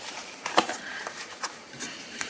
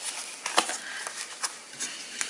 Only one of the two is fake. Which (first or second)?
first